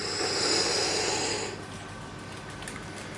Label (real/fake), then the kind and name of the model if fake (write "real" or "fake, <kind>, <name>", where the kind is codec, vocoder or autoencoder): real